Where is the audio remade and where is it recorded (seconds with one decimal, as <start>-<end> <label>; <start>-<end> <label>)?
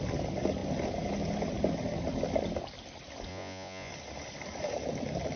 0.0-3.3 recorded; 3.3-3.9 remade; 3.9-5.4 recorded